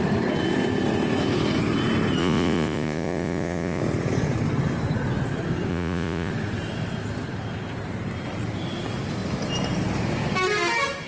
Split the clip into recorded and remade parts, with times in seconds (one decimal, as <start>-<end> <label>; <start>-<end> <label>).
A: 0.0-2.2 recorded; 2.2-3.8 remade; 3.8-5.7 recorded; 5.7-6.3 remade; 6.3-11.1 recorded